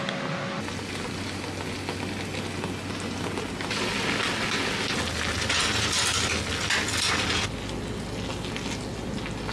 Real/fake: real